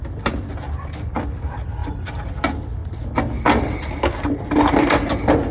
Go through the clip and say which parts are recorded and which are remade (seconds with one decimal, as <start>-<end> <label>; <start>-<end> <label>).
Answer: 0.0-5.5 recorded